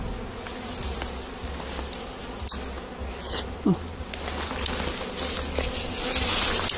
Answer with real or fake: real